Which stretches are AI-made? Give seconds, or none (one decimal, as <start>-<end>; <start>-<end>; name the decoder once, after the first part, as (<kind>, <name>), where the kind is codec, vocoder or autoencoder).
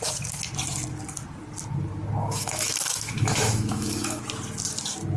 2.2-4.2 (autoencoder, DAC-VAE)